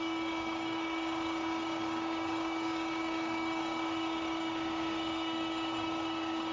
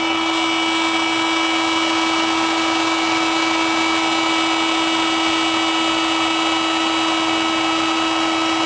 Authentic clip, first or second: second